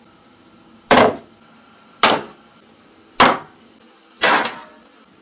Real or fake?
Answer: real